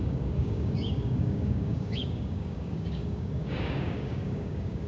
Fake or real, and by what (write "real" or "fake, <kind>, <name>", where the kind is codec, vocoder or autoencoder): fake, codec, DAC